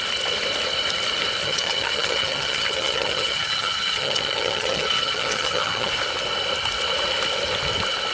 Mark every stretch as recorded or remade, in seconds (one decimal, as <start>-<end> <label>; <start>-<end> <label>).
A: 0.0-1.4 recorded; 1.4-5.9 remade; 5.9-8.1 recorded